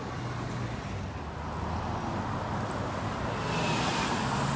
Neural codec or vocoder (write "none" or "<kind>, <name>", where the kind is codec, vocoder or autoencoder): none